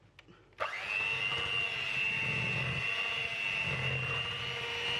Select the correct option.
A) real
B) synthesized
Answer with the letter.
A